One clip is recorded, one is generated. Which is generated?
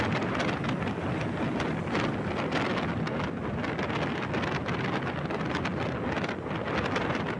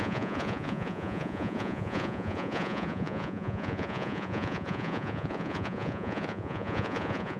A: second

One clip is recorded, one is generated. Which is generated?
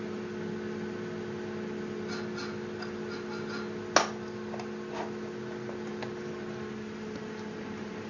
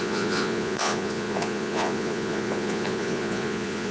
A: second